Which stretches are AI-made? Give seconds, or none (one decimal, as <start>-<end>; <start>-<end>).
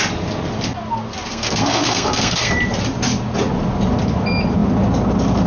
1.3-2.5